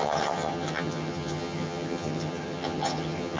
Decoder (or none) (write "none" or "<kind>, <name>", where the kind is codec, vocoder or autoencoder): vocoder, HiFi-GAN